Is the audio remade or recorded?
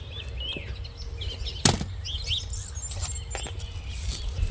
recorded